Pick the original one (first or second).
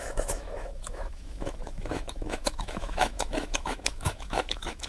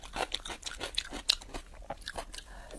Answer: second